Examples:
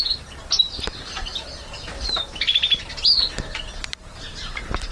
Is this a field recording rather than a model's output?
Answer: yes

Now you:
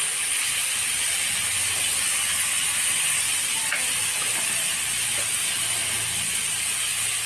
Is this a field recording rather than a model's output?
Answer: yes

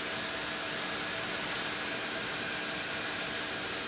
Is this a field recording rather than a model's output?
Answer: yes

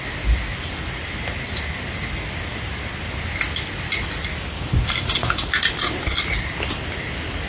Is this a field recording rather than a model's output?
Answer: yes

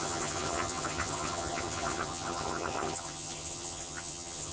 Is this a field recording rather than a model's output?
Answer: no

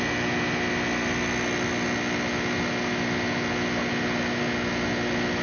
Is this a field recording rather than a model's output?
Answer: yes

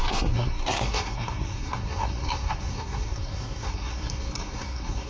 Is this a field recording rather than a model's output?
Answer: no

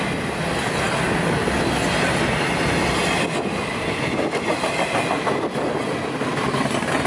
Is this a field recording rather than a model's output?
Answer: yes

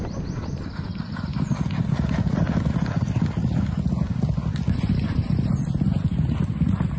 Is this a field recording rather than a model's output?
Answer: yes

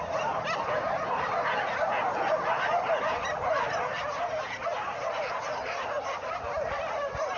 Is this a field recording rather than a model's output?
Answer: yes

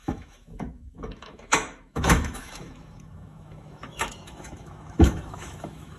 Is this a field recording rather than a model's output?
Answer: no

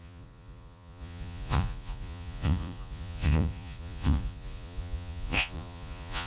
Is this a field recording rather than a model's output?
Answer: no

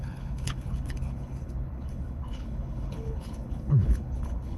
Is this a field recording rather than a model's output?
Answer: no